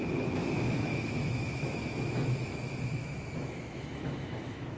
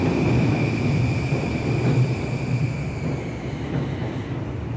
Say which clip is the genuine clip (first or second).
second